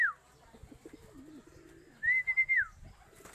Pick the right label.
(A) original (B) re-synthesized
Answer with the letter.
A